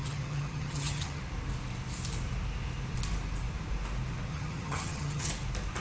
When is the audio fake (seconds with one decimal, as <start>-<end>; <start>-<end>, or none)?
0.0-1.2; 4.3-5.3

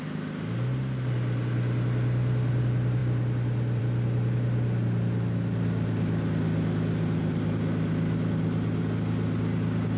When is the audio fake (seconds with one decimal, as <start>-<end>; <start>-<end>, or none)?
none

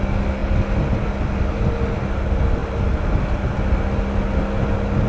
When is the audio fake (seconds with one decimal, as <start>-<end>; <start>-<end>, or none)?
none

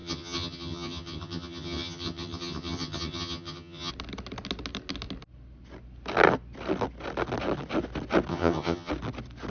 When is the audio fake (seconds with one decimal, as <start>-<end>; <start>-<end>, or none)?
0.0-3.9; 8.3-8.9

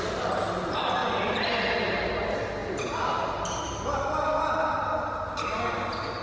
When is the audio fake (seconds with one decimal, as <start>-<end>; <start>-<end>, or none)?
none